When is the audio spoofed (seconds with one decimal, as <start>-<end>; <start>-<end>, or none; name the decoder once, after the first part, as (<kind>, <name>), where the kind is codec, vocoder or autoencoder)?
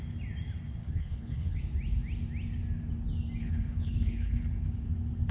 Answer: 0.8-1.6 (codec, HILCodec); 3.4-4.4